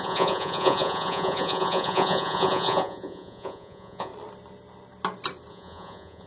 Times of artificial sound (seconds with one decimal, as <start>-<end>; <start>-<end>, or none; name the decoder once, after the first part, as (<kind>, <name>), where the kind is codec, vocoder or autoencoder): 0.0-4.1 (vocoder, Vocos); 5.5-6.3